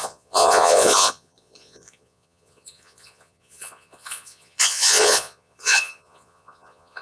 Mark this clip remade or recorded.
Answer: remade